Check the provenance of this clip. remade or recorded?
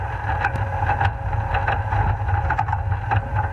recorded